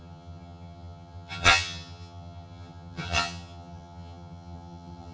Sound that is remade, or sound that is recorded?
remade